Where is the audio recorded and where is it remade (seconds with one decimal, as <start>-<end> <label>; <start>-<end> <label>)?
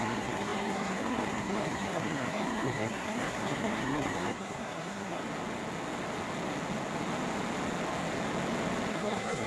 0.0-5.2 remade; 5.2-8.9 recorded; 8.9-9.5 remade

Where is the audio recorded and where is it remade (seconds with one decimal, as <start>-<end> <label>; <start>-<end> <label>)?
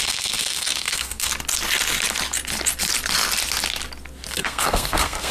0.0-1.3 remade; 1.3-4.3 recorded; 4.3-5.3 remade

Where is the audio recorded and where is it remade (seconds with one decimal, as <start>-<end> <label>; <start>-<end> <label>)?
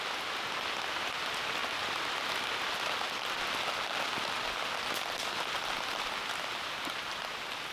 0.0-7.7 recorded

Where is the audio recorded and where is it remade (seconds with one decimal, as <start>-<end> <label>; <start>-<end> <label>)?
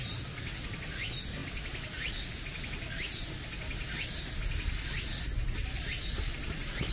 0.0-6.9 recorded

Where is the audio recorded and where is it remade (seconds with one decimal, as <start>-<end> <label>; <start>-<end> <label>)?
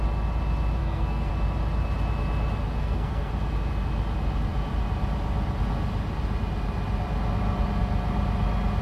0.0-0.8 recorded; 0.8-1.3 remade; 1.3-2.8 recorded; 2.8-3.3 remade; 3.3-8.8 recorded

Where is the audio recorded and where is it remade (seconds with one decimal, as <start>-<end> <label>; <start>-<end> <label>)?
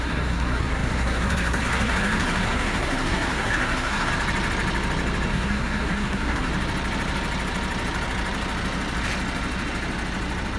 0.0-4.1 remade; 4.1-5.3 recorded; 5.3-6.5 remade; 6.5-10.6 recorded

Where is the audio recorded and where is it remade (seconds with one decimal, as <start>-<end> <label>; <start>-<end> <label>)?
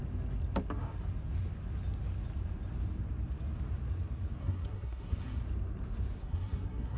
0.0-4.4 recorded; 4.4-5.4 remade; 5.4-6.2 recorded; 6.2-7.0 remade